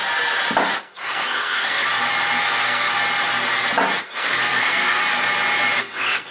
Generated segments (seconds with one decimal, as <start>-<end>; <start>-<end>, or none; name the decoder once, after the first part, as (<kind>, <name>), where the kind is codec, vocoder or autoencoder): 0.8-1.9 (codec, SNAC); 2.4-2.9; 4.0-5.0; 5.8-6.3